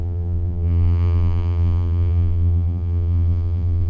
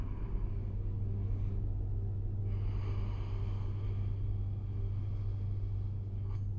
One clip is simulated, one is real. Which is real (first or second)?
second